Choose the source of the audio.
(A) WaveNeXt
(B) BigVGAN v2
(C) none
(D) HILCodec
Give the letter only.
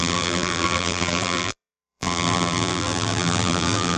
B